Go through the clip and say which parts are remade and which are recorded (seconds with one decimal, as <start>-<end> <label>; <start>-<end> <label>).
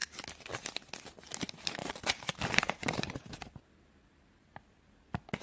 0.0-1.8 recorded; 1.8-3.6 remade; 3.6-5.4 recorded